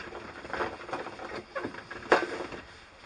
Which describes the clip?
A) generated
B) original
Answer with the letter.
B